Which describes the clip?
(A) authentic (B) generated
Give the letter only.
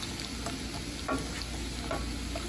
A